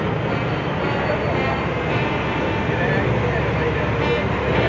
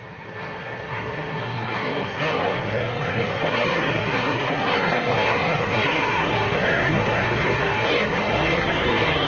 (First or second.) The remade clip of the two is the second